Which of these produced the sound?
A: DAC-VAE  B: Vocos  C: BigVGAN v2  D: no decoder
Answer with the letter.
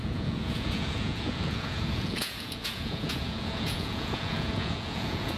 B